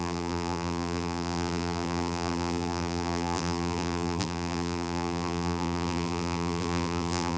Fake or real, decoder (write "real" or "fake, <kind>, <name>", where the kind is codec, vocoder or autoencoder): fake, vocoder, BigVGAN v2